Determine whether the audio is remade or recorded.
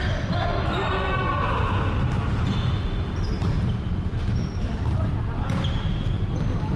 recorded